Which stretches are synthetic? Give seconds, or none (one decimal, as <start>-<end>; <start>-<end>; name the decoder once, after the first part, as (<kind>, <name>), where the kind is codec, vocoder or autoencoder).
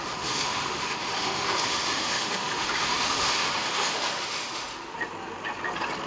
0.0-4.9 (autoencoder, DAC-VAE)